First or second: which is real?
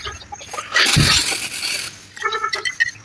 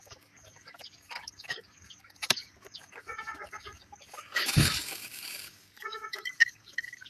first